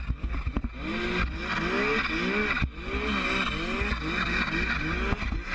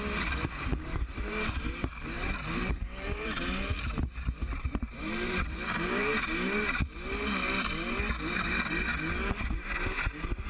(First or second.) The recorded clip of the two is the first